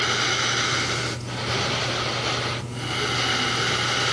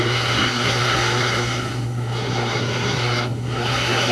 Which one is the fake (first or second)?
second